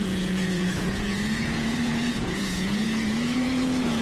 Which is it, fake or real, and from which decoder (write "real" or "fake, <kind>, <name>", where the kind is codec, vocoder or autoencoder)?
fake, vocoder, Vocos